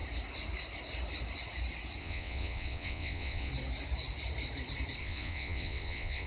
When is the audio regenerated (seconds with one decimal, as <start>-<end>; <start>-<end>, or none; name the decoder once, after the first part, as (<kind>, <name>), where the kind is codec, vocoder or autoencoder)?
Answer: 2.0-3.5 (vocoder, WaveNeXt); 5.0-6.3

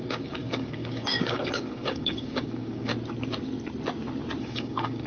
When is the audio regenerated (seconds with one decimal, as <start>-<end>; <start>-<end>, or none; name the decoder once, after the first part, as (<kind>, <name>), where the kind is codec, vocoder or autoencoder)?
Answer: 0.0-2.9 (codec, DAC); 4.4-5.1